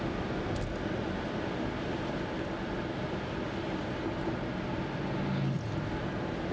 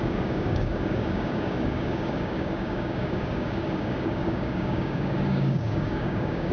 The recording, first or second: first